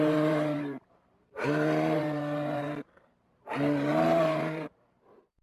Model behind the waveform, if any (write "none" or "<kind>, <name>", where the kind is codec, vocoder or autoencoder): vocoder, BigVGAN v2